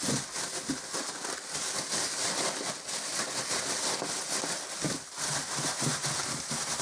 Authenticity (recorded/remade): recorded